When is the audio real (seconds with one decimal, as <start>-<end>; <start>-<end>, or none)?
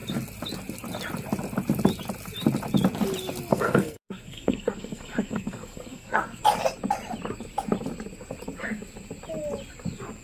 0.0-3.5; 6.4-10.2